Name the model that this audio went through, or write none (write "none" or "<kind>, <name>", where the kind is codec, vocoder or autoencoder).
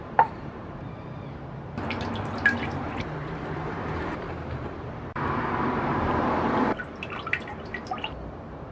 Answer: vocoder, BigVGAN v2